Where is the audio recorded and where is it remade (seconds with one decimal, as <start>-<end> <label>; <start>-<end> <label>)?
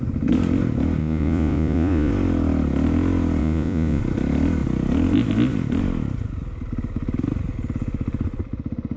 0.0-1.0 recorded; 1.0-2.1 remade; 2.1-3.4 recorded; 3.4-4.0 remade; 4.0-9.0 recorded